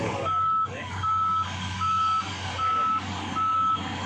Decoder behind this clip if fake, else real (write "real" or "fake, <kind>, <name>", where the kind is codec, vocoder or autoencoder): fake, codec, DAC